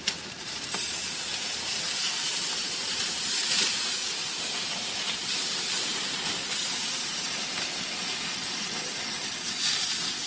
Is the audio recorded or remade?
recorded